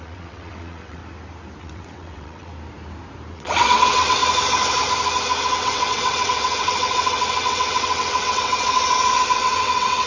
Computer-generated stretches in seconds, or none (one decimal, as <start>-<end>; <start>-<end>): 0.0-1.0; 1.6-2.5; 3.3-4.2; 5.5-10.1